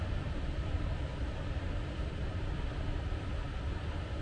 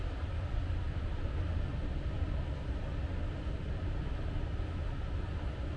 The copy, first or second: first